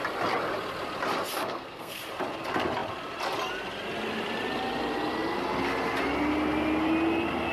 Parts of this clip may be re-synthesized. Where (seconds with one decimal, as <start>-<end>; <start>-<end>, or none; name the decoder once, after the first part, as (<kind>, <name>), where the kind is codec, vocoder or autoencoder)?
1.4-2.0 (codec, SNAC)